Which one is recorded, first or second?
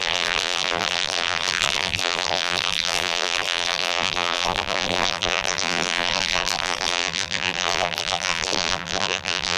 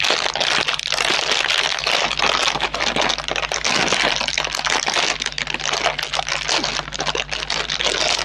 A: second